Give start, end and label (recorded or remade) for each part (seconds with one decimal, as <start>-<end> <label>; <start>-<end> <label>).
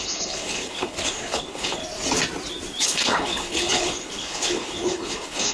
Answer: 0.0-1.8 remade; 1.8-2.8 recorded; 2.8-5.5 remade